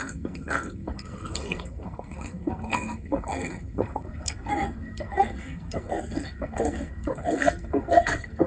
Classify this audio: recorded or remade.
remade